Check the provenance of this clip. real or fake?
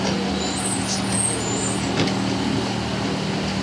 real